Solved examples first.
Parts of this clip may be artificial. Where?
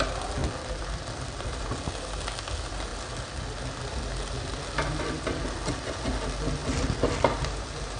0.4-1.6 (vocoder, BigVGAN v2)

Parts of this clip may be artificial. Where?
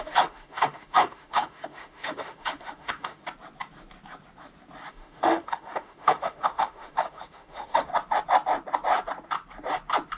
0.0-3.2 (autoencoder, DAC-VAE); 4.9-7.9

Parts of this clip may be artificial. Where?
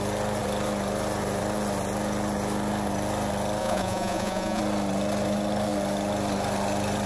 3.6-4.6 (vocoder, Vocos)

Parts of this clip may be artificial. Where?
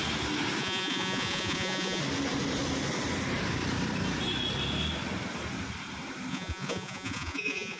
0.6-2.0 (vocoder, Vocos); 6.3-7.8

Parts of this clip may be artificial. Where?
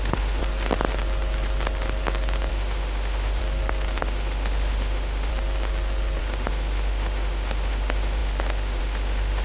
0.0-0.4 (autoencoder, DAC-VAE); 2.5-3.4; 4.0-5.3; 6.2-9.4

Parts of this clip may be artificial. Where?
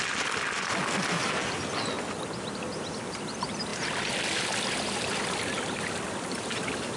none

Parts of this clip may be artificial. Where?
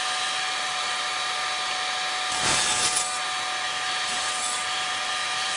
0.0-1.1 (vocoder, BigVGAN v2); 3.9-5.6